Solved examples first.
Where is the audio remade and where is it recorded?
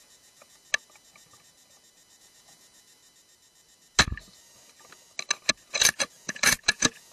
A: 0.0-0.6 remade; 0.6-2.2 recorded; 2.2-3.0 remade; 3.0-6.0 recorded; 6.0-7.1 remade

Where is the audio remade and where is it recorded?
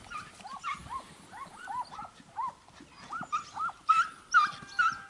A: 0.0-5.1 recorded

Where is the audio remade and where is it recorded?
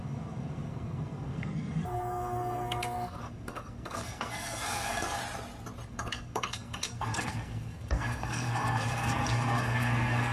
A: 0.0-5.2 remade; 5.2-5.9 recorded; 5.9-10.3 remade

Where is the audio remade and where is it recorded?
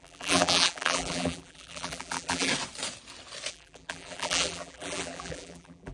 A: 0.0-2.5 remade; 2.5-3.5 recorded; 3.5-5.9 remade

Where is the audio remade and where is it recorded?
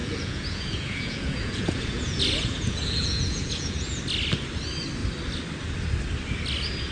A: 0.0-4.0 remade; 4.0-6.9 recorded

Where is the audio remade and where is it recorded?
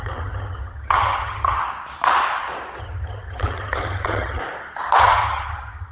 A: 0.0-1.6 remade; 1.6-2.8 recorded; 2.8-4.4 remade; 4.4-5.0 recorded; 5.0-5.9 remade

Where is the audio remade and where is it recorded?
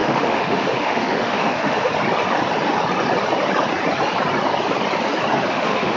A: 0.0-1.9 remade; 1.9-5.5 recorded; 5.5-6.0 remade